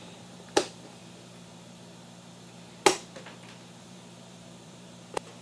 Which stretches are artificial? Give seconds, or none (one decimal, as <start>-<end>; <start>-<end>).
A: 0.0-1.0; 3.8-5.4